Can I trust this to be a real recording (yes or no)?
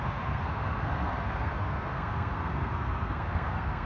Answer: no